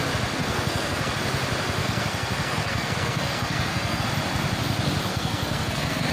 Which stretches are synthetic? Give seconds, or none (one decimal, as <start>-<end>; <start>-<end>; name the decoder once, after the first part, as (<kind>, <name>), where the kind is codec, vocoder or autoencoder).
0.4-1.1 (codec, SNAC); 1.8-4.0; 5.1-6.1